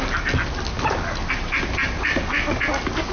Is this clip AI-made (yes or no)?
no